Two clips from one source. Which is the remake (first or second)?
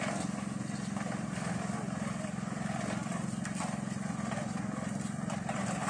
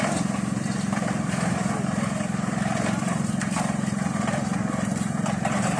second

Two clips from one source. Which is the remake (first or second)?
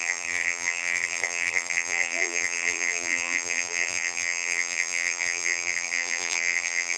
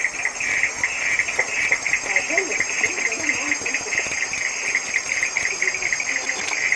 first